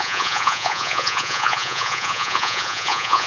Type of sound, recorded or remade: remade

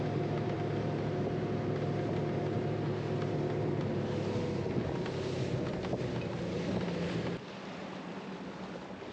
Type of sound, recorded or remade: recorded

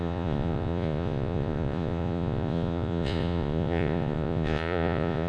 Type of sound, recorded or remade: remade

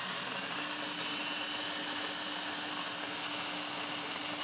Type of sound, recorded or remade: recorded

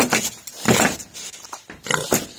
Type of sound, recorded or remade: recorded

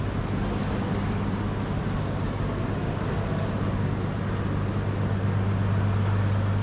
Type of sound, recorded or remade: recorded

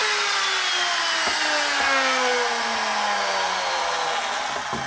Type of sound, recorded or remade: recorded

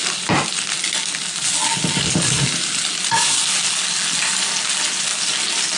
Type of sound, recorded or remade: recorded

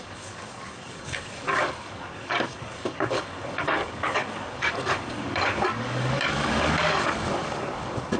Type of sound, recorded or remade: remade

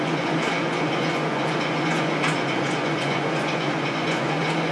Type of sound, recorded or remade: remade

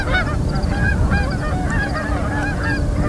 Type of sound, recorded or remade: recorded